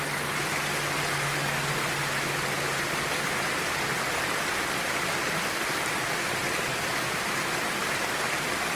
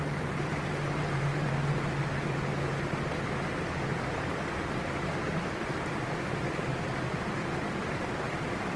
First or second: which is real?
first